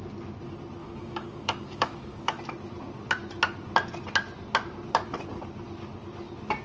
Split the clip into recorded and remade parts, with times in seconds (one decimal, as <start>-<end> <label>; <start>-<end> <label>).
0.0-0.8 recorded; 0.8-2.4 remade; 2.4-6.6 recorded